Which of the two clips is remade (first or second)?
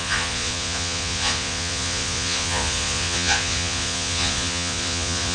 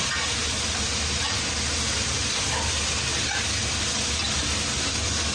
first